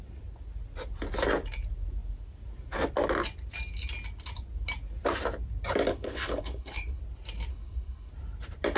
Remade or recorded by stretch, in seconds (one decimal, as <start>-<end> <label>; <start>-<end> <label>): 0.0-5.9 recorded; 5.9-7.0 remade; 7.0-7.5 recorded; 7.5-8.1 remade; 8.1-8.8 recorded